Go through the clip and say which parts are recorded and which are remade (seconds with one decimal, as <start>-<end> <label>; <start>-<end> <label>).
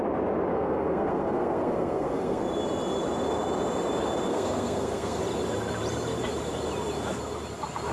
0.0-0.5 recorded; 0.5-2.4 remade; 2.4-4.3 recorded; 4.3-5.2 remade; 5.2-7.9 recorded